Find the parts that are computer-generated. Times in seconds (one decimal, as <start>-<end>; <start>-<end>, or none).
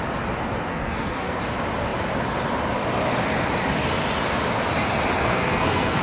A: 0.7-1.4; 5.2-6.0